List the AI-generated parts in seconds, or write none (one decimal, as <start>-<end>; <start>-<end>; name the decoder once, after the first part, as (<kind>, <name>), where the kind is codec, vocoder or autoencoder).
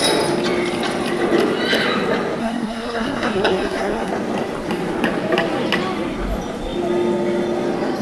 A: 2.4-4.1 (codec, SNAC)